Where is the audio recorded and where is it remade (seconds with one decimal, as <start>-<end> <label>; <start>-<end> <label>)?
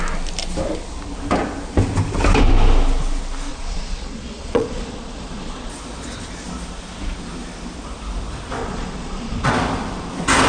0.0-3.5 recorded; 3.5-5.7 remade; 5.7-8.6 recorded; 8.6-9.5 remade; 9.5-10.5 recorded